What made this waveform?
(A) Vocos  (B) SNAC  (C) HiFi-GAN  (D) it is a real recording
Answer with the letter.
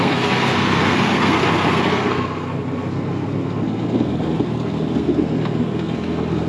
B